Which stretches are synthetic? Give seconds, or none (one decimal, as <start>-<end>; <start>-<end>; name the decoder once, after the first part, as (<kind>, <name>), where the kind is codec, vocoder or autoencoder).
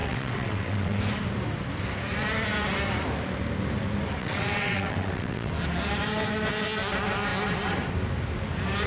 0.0-1.0 (vocoder, WaveNeXt); 4.2-5.5